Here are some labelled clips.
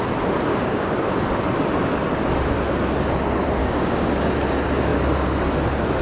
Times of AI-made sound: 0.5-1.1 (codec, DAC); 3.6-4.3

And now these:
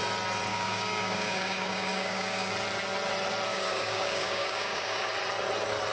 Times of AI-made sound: 0.5-2.5 (codec, DAC); 3.5-5.1

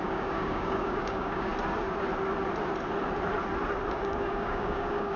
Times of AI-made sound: 0.0-1.5 (codec, DAC); 3.9-5.2

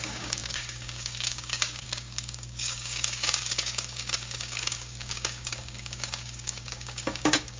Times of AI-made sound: 0.0-7.6 (codec, DAC)

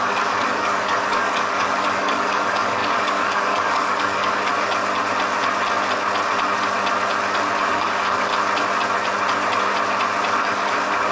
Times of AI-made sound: 0.0-4.5 (codec, DAC); 7.7-8.3; 10.4-11.1

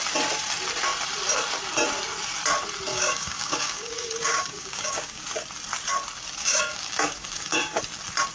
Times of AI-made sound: 2.9-5.2 (codec, DAC); 6.4-7.8